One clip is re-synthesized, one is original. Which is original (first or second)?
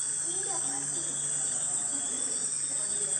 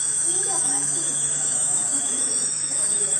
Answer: first